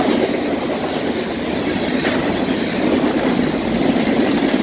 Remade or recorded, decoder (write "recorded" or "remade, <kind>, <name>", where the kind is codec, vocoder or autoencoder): recorded